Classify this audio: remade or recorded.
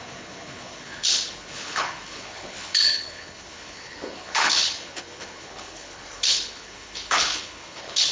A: remade